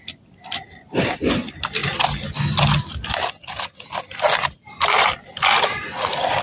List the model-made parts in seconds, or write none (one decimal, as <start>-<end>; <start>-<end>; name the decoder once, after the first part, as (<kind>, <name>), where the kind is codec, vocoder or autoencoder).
none